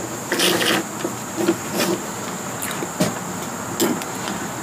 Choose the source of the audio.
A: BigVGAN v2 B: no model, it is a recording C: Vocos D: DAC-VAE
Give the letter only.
B